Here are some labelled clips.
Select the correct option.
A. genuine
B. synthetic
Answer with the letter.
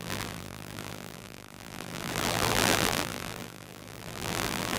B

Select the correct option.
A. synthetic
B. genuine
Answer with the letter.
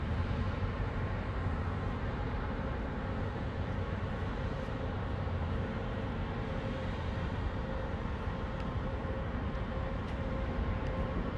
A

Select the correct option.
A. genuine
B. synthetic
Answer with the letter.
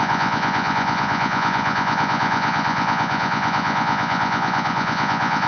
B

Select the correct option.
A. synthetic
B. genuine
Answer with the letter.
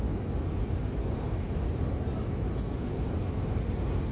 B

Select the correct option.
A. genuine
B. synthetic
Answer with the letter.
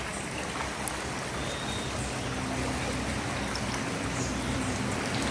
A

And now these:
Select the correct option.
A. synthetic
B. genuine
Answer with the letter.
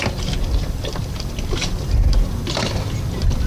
B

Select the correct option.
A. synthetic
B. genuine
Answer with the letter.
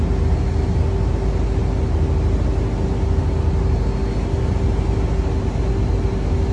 B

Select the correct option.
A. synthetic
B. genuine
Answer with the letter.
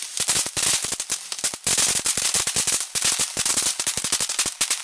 B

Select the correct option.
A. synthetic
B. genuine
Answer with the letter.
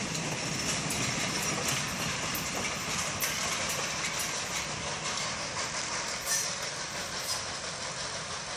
B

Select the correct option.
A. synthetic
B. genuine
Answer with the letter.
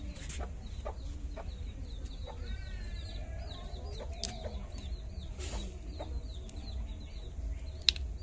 B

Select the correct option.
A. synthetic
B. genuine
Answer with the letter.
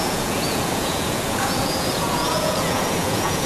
A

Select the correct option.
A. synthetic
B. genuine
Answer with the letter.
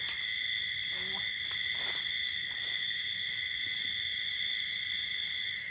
B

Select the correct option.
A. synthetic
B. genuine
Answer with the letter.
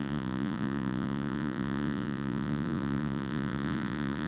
A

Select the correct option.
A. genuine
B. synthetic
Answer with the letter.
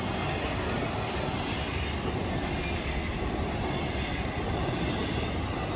A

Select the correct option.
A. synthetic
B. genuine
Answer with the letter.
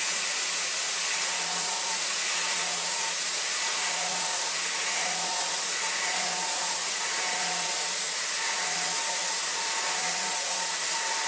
A